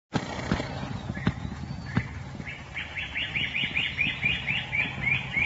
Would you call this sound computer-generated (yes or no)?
no